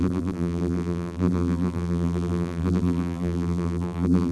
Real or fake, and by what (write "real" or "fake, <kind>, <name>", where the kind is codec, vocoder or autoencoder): fake, vocoder, BigVGAN v2